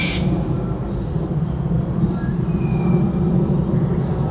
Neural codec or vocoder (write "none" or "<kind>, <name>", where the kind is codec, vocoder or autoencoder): none